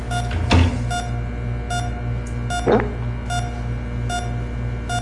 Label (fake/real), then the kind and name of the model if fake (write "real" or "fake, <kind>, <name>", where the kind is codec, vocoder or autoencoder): real